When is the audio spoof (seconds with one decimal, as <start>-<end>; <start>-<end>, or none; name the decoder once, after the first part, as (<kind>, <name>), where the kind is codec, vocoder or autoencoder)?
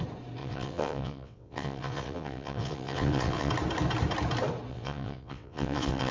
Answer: 0.4-3.5 (vocoder, WaveNeXt); 4.7-6.1